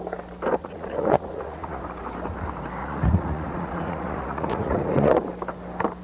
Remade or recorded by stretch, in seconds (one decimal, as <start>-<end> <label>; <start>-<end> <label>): 0.0-0.6 recorded; 0.6-1.8 remade; 1.8-2.8 recorded; 2.8-5.2 remade; 5.2-6.0 recorded